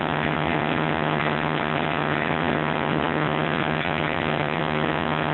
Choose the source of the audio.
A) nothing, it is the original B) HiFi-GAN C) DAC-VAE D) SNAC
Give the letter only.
B